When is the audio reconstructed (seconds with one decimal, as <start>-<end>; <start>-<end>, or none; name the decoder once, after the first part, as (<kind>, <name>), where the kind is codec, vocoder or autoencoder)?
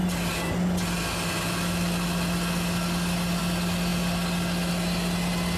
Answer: none